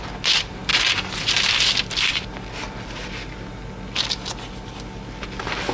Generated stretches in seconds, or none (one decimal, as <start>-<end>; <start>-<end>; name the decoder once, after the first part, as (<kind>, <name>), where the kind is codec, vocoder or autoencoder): none